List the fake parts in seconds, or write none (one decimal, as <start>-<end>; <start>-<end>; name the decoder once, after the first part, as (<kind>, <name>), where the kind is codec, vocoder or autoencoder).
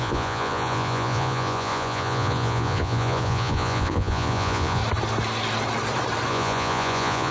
0.0-4.8 (vocoder, Vocos); 6.3-7.3